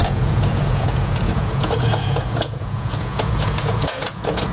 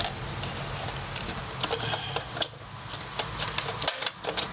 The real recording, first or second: second